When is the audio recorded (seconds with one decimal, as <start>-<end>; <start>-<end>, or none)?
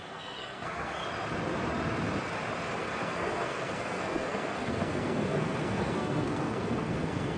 1.0-2.8